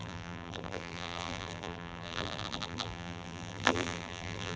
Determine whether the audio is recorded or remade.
remade